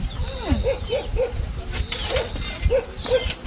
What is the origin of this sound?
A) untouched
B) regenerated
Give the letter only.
A